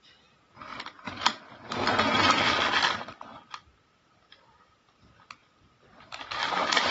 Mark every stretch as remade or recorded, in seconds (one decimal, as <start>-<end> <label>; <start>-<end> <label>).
0.0-0.7 recorded; 0.7-1.4 remade; 1.4-6.9 recorded